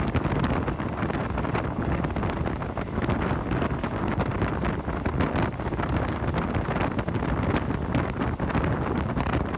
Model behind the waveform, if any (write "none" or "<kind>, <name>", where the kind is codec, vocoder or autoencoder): none